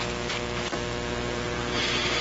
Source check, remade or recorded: recorded